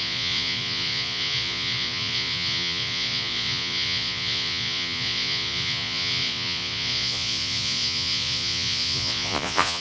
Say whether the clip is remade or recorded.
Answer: remade